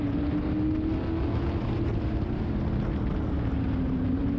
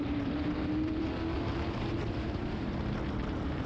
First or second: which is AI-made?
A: second